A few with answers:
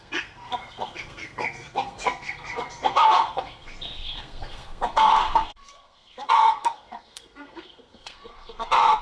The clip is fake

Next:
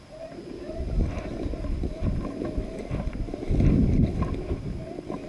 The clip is real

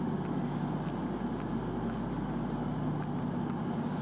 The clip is real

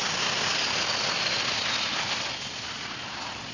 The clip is real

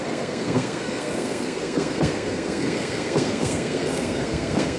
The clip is fake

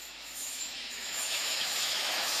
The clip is fake